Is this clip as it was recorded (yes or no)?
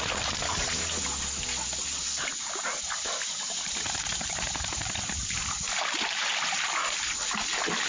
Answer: yes